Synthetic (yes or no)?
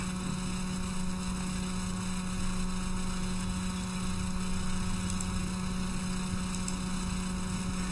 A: no